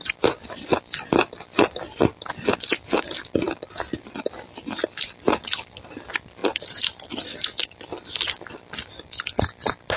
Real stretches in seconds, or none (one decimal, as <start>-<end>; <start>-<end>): 0.0-6.4; 7.1-10.0